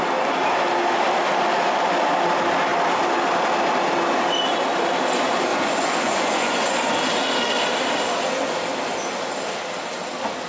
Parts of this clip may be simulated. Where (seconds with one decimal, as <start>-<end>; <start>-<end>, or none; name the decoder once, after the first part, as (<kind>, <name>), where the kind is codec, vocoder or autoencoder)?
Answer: 5.5-7.0 (vocoder, Vocos)